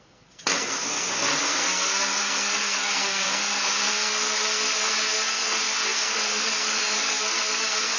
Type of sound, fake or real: fake